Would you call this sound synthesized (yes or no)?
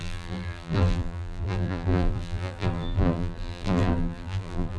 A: yes